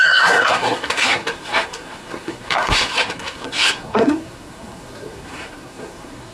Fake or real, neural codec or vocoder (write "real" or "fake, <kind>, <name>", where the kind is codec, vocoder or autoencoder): fake, codec, SNAC